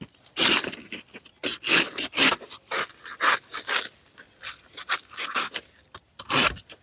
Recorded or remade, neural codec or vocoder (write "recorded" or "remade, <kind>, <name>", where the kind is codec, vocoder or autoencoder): recorded